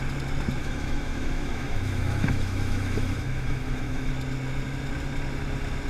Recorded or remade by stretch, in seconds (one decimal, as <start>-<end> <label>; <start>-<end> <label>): 0.0-0.6 recorded; 0.6-4.1 remade; 4.1-5.9 recorded